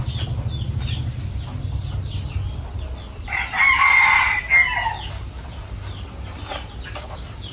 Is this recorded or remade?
recorded